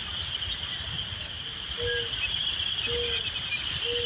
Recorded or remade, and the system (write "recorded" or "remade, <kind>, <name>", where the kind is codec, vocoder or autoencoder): recorded